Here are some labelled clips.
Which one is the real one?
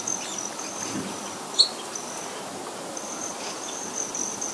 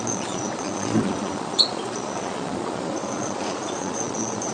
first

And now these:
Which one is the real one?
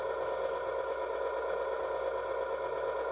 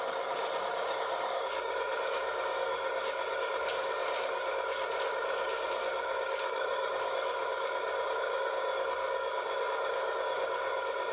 first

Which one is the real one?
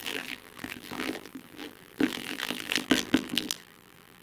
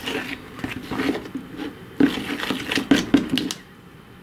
second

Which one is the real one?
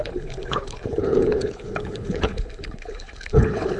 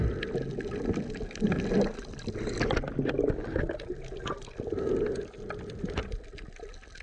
second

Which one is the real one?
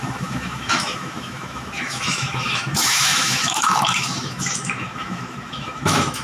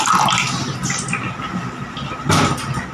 second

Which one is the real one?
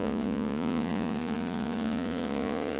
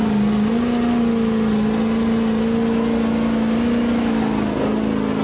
second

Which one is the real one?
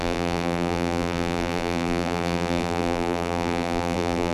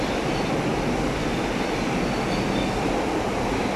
second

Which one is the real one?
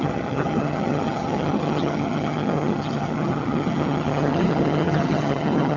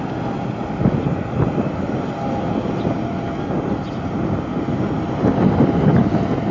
second